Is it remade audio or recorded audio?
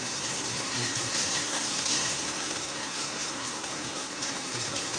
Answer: remade